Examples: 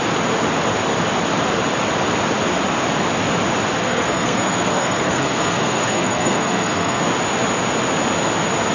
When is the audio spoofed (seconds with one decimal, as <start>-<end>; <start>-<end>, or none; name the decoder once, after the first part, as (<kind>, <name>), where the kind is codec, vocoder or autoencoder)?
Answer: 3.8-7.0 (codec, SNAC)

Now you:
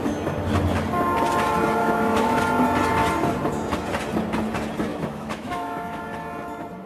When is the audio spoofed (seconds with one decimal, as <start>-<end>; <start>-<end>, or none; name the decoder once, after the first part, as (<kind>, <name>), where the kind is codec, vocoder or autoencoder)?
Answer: 1.8-2.4 (autoencoder, DAC-VAE); 4.9-6.0

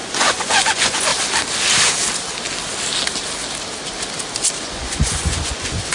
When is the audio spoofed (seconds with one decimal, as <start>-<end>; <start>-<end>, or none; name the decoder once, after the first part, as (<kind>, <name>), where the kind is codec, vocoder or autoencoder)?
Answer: 0.0-1.1 (vocoder, Vocos); 4.6-5.9

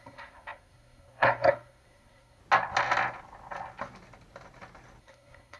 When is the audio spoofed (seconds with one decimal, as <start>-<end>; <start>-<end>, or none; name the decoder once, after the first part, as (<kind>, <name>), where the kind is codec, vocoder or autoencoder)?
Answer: 0.0-2.4 (codec, SNAC); 5.0-5.6

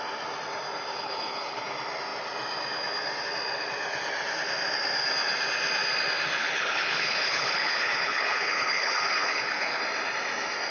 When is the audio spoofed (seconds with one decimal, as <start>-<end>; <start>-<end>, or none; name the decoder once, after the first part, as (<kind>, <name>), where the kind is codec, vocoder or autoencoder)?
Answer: 0.9-1.6 (codec, HILCodec); 6.4-9.8